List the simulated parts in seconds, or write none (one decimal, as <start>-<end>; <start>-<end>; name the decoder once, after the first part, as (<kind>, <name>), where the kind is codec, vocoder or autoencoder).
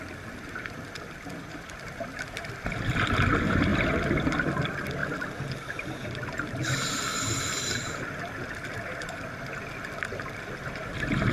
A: none